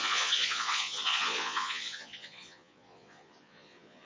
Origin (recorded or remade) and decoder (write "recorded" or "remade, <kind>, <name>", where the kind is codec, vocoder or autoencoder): remade, vocoder, Vocos